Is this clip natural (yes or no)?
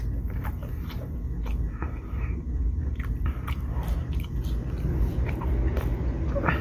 yes